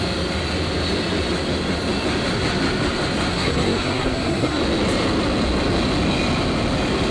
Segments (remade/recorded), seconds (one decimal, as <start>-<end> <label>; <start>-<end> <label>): 0.0-3.3 recorded; 3.3-4.6 remade; 4.6-7.1 recorded